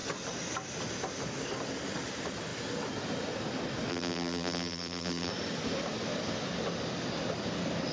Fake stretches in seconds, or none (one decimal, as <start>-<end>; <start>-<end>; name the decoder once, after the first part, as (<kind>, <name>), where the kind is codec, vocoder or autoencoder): 3.9-5.3 (vocoder, BigVGAN v2)